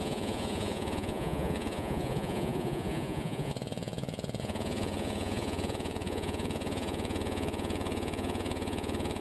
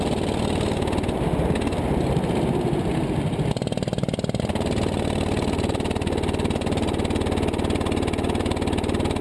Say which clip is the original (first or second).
second